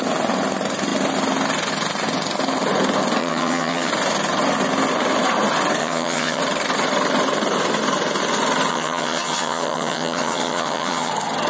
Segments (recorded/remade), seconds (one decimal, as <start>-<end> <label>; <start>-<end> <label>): 0.0-3.2 recorded; 3.2-3.9 remade; 3.9-5.8 recorded; 5.8-6.4 remade; 6.4-8.7 recorded; 8.7-11.1 remade; 11.1-11.5 recorded